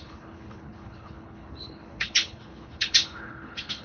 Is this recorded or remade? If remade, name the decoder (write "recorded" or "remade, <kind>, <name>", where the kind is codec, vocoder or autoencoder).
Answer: remade, codec, HILCodec